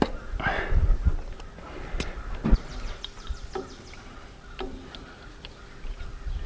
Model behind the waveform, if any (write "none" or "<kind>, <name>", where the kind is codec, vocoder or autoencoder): none